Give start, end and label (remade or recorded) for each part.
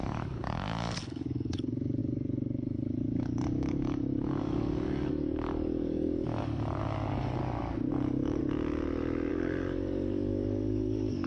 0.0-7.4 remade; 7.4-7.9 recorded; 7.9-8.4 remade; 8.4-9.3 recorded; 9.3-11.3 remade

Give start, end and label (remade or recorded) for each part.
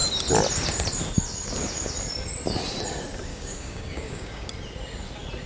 0.0-3.3 recorded; 3.3-4.5 remade; 4.5-5.5 recorded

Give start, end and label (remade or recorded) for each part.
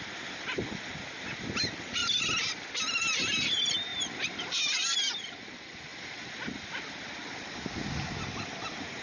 0.0-9.0 recorded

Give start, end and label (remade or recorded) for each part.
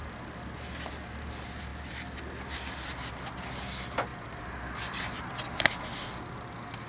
0.0-6.9 recorded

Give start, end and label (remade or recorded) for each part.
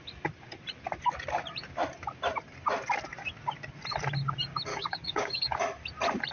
0.0-4.7 recorded; 4.7-5.6 remade; 5.6-6.3 recorded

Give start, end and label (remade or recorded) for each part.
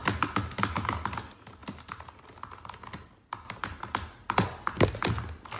0.0-5.6 recorded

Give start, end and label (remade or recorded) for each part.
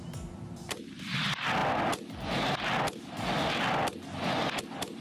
0.0-5.0 recorded